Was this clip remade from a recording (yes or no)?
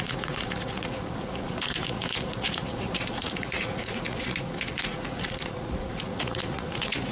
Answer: yes